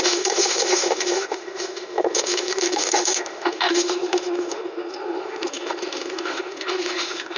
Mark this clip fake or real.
fake